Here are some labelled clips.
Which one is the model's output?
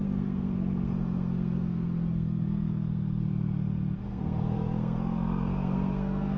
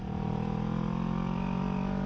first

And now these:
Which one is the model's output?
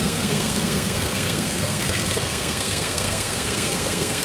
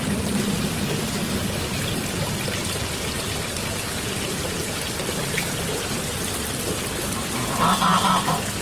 first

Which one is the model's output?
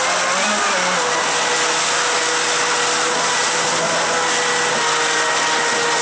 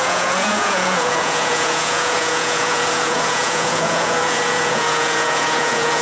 second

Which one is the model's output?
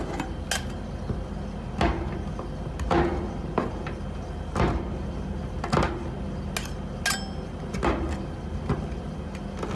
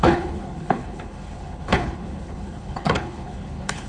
second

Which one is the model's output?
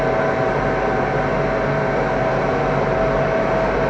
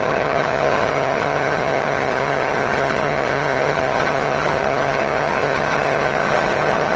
second